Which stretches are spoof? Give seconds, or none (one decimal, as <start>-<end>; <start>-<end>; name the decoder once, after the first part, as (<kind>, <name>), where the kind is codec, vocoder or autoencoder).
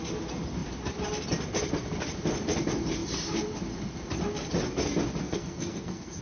5.2-6.2 (codec, SNAC)